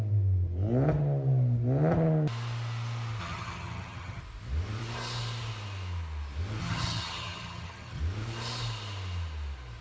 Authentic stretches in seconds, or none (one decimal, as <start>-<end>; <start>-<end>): 0.0-3.2; 4.2-6.6; 8.0-9.8